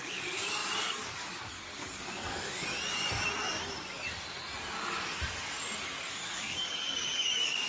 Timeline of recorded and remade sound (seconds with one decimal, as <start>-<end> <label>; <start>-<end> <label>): 0.0-2.7 remade; 2.7-6.1 recorded; 6.1-7.7 remade